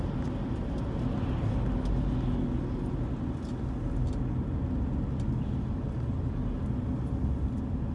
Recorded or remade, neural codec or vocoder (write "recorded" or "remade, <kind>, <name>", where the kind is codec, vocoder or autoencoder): recorded